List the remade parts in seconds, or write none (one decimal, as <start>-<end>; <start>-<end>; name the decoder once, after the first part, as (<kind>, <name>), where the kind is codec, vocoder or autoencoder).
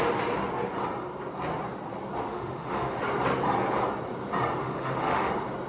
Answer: 2.3-3.0 (autoencoder, DAC-VAE); 4.6-5.3